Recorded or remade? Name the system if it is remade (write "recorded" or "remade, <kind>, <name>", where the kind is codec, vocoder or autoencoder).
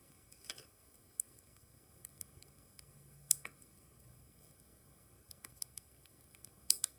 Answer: remade, codec, SNAC